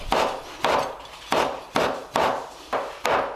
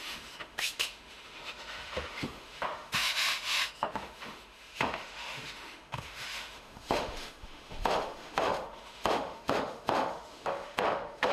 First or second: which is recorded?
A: first